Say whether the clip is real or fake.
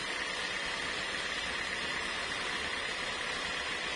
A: real